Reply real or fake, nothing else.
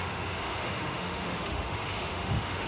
fake